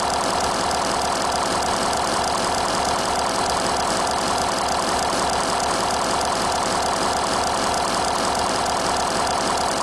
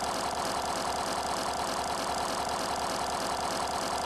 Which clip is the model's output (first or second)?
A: first